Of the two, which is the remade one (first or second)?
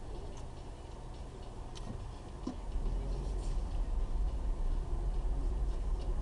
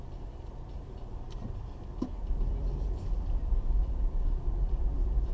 second